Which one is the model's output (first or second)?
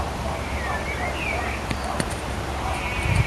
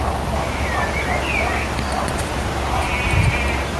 first